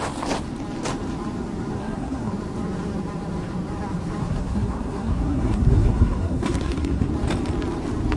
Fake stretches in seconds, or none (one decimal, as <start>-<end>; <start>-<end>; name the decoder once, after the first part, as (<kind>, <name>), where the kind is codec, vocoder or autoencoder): 1.8-2.3 (codec, SNAC); 4.2-7.1